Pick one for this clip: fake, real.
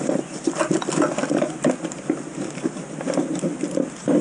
real